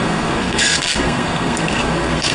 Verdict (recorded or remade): remade